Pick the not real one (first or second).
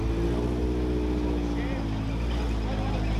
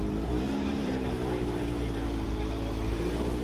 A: second